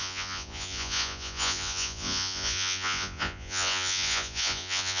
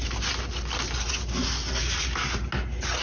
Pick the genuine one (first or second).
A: second